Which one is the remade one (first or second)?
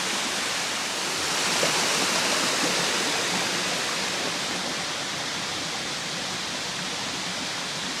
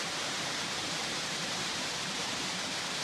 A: second